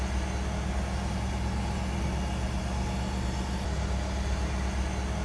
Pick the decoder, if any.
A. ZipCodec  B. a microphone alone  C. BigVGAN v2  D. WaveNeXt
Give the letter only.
B